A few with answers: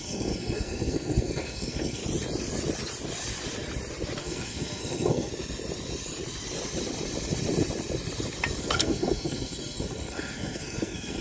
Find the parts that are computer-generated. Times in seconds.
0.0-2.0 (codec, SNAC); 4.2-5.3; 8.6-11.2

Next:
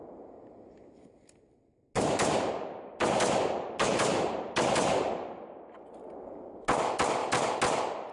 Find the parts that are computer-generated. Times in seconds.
none

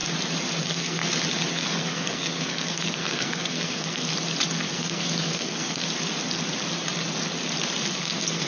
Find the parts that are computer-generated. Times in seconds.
0.6-1.0 (codec, SNAC); 1.5-4.1; 4.7-5.8; 8.0-8.5

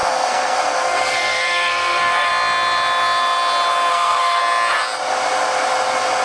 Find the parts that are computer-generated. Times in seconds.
0.0-2.3 (codec, SNAC); 3.9-4.4

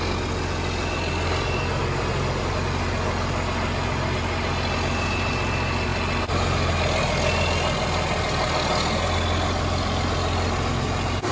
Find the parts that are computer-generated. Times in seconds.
none

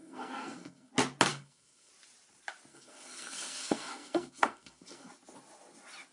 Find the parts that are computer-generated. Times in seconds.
0.0-0.9 (codec, SNAC); 1.3-1.9; 2.7-5.1

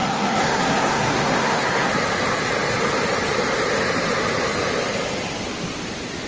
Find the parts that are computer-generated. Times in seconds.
0.0-1.9 (codec, SNAC)

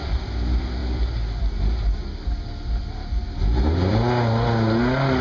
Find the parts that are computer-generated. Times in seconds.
none